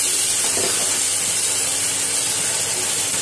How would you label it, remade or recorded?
recorded